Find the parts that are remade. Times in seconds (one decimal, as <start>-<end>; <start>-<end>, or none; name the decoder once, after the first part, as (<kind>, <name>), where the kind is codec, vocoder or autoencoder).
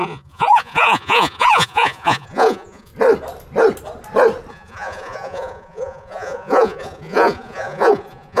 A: 0.0-2.9 (vocoder, Vocos); 4.5-8.4